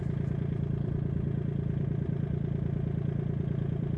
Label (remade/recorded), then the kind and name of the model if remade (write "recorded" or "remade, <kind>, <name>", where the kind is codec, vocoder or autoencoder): recorded